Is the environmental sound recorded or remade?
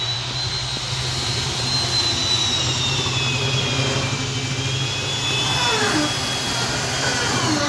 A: recorded